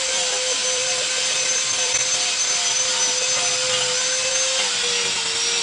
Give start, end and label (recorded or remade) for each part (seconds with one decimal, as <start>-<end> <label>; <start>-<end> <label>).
0.0-2.0 remade; 2.0-5.6 recorded